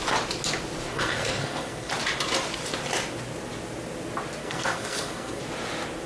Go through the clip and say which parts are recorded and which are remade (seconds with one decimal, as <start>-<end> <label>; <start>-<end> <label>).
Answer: 0.0-0.9 recorded; 0.9-1.9 remade; 1.9-4.4 recorded; 4.4-5.4 remade; 5.4-6.1 recorded

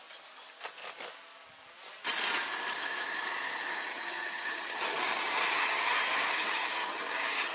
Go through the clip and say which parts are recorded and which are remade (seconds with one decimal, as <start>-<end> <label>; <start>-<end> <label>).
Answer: 0.0-3.9 recorded; 3.9-7.5 remade